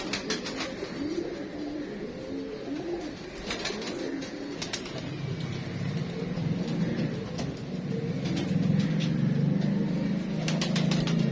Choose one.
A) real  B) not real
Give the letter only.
A